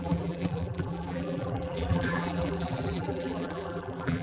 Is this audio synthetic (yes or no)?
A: yes